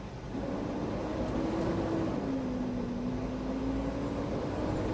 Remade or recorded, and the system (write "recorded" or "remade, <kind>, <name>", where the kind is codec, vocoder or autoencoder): recorded